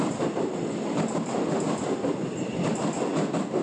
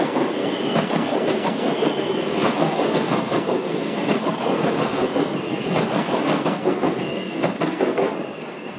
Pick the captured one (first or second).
first